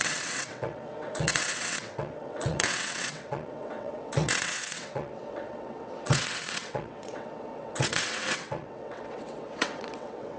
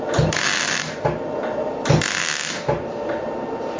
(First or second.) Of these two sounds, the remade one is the first